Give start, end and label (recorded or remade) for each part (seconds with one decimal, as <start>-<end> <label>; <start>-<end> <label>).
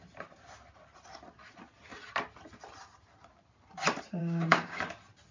0.0-4.2 recorded; 4.2-4.8 remade; 4.8-5.3 recorded